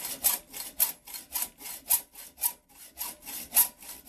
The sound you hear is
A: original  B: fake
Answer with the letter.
A